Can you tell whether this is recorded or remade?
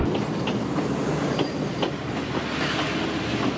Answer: recorded